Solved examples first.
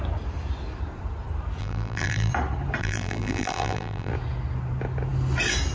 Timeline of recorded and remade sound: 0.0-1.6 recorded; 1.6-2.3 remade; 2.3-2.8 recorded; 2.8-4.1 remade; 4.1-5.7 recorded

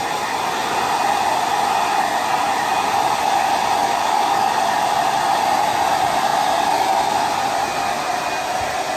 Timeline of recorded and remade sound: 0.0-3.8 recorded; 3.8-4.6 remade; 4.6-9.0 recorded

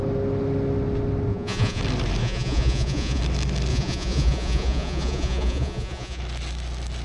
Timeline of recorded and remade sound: 0.0-1.3 recorded; 1.3-1.8 remade; 1.8-2.2 recorded; 2.2-3.2 remade; 3.2-3.7 recorded; 3.7-6.2 remade; 6.2-7.0 recorded